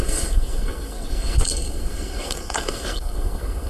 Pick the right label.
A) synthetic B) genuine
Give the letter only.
A